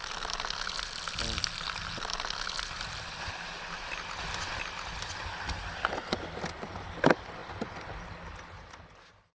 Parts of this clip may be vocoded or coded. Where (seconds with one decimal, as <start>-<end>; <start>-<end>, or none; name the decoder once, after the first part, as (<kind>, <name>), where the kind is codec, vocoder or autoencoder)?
none